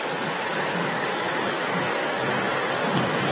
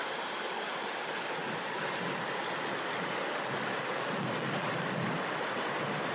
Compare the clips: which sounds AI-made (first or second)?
first